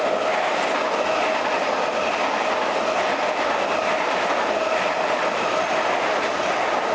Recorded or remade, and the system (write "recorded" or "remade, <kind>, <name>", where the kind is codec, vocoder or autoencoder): recorded